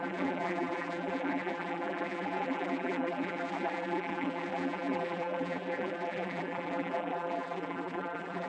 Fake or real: fake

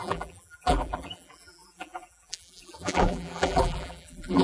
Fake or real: fake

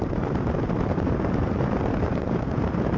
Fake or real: fake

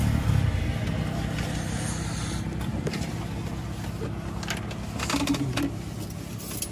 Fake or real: real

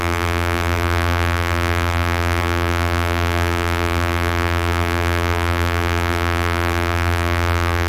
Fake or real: fake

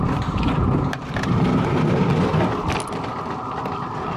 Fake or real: real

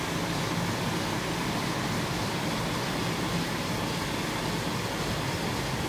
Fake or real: real